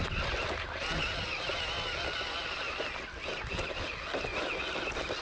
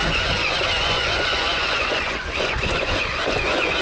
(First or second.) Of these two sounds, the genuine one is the first